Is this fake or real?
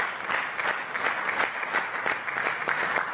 real